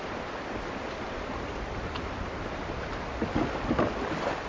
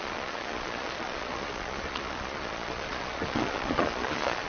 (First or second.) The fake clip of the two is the second